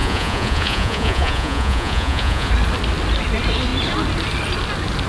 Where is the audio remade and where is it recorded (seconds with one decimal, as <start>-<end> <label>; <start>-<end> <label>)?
0.0-2.5 remade; 2.5-5.1 recorded